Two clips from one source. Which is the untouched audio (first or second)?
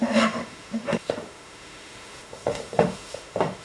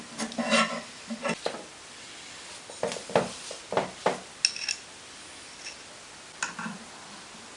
second